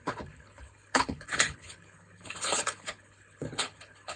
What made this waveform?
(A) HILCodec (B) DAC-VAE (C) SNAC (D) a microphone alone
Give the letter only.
A